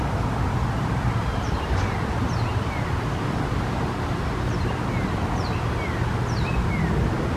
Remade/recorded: recorded